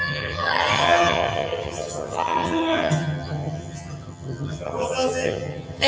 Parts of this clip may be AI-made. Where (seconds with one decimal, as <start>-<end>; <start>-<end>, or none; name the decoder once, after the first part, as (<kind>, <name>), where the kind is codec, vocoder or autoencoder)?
0.0-5.9 (vocoder, HiFi-GAN)